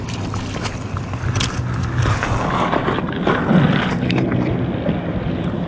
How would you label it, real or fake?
real